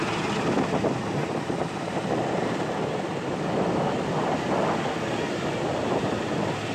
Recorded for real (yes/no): yes